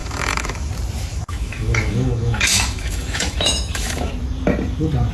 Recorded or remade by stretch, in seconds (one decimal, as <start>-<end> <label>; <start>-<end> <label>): 0.0-0.7 remade; 0.7-1.1 recorded; 1.1-4.1 remade; 4.1-5.1 recorded